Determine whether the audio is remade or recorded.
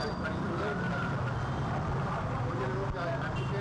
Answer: recorded